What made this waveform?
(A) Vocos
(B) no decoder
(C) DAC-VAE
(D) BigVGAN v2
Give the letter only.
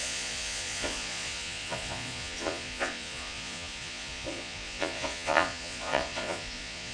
A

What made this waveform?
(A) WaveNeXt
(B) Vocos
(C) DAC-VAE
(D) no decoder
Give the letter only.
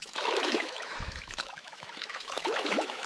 C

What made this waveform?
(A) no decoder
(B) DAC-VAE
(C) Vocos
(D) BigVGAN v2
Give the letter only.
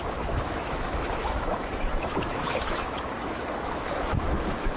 B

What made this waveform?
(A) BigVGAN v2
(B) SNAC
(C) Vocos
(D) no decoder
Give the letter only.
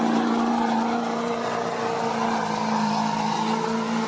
D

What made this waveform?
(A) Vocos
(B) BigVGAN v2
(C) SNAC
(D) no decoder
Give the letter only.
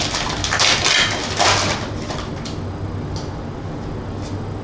D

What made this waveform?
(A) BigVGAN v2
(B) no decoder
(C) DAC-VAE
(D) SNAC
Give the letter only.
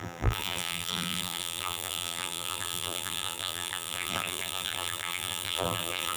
A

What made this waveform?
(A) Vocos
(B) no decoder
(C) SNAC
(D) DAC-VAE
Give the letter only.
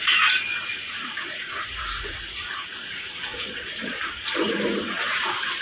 A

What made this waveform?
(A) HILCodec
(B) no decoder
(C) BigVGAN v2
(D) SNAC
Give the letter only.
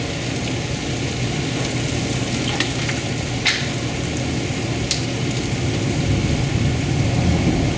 B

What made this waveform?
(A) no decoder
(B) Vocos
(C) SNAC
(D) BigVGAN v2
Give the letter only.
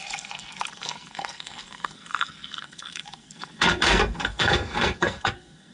C